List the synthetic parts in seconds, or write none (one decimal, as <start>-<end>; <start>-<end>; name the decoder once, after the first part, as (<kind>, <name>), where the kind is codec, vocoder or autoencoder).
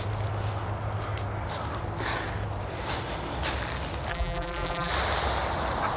4.1-4.9 (vocoder, BigVGAN v2)